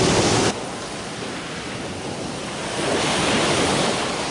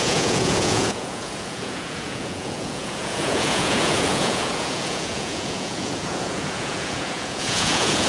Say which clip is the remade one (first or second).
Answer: second